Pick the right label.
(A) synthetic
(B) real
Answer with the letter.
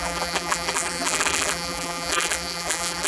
A